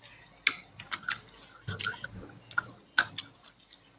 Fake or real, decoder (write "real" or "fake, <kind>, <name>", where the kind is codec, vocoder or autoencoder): real